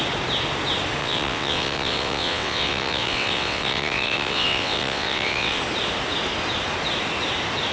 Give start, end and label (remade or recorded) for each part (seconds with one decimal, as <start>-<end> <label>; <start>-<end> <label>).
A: 0.0-1.0 recorded; 1.0-5.6 remade; 5.6-7.7 recorded